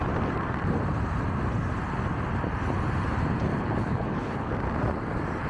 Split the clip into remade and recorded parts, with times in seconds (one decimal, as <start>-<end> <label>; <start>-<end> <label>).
0.0-3.5 recorded; 3.5-4.5 remade; 4.5-5.5 recorded